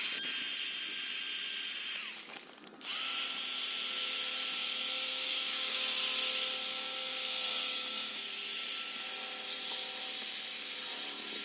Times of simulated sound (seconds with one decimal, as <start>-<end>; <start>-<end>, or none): 4.6-6.0; 6.7-8.2